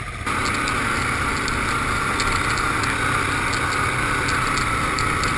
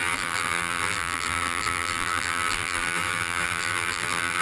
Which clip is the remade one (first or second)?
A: second